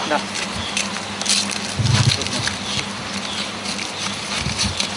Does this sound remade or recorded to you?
recorded